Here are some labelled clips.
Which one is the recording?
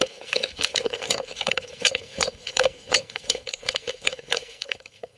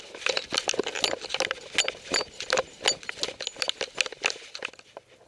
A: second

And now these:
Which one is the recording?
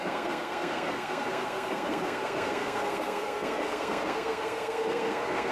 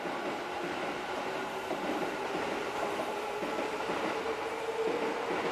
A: second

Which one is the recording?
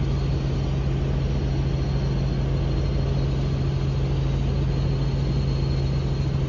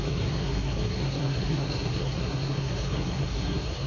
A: first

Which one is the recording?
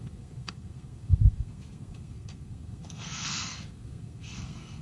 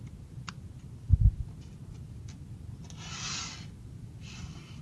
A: second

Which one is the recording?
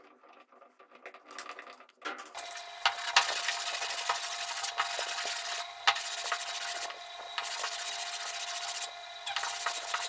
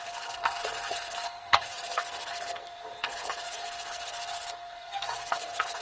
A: first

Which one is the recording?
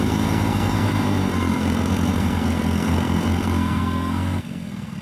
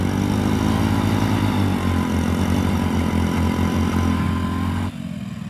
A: second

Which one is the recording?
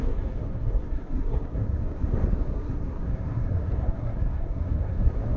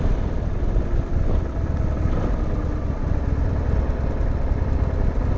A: second